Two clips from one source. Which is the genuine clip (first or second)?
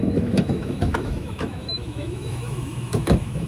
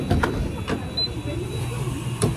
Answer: second